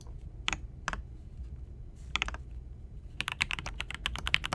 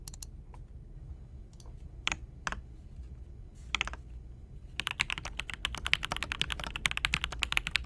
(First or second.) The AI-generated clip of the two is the first